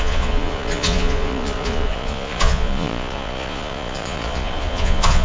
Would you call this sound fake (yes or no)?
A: yes